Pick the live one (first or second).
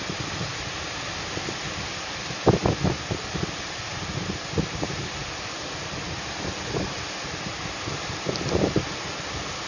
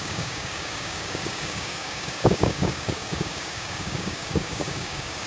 first